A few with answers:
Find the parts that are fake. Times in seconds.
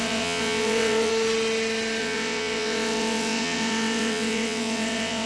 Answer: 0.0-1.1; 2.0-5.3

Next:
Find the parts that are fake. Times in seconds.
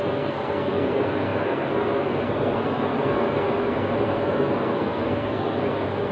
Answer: 0.0-6.1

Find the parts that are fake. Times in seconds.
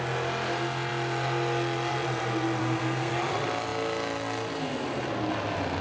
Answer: 2.6-3.1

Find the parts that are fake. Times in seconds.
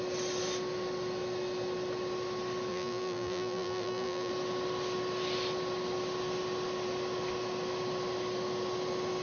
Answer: 2.7-4.3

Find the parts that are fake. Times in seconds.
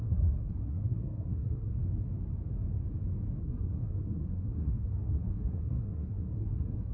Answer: 0.0-1.8; 3.4-6.9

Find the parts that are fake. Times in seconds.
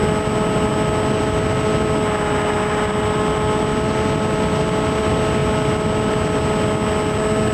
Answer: none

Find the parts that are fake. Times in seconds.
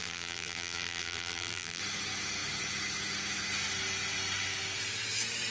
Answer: 0.0-1.8